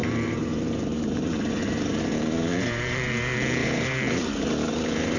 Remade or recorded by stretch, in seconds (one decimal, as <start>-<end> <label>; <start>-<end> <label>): 0.0-3.1 remade; 3.1-3.6 recorded; 3.6-5.2 remade